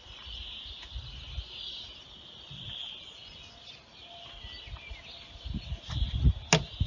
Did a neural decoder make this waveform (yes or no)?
no